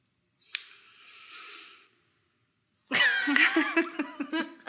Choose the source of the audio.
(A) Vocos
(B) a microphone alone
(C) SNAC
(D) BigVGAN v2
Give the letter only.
B